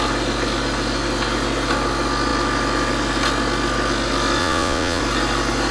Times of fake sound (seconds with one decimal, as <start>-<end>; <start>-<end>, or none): 4.4-5.0